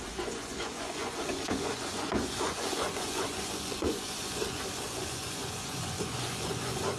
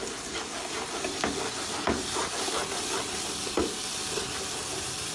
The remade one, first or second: first